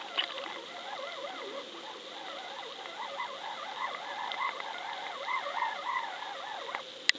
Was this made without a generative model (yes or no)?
yes